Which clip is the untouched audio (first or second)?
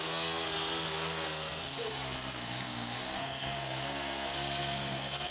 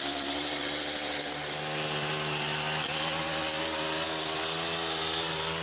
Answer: second